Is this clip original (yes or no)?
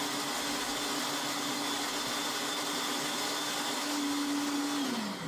yes